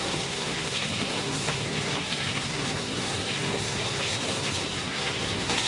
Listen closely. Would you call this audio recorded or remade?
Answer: remade